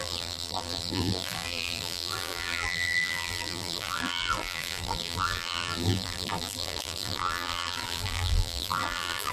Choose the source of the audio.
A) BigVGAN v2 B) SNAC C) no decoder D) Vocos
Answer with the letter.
A